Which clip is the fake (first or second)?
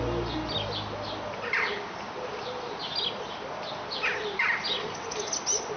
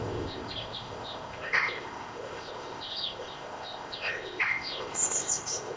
second